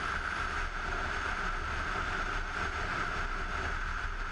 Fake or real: real